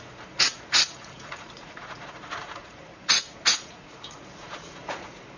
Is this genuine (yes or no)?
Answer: no